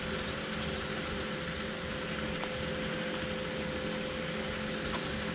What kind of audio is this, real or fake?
real